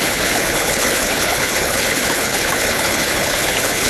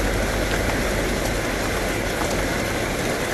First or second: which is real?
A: second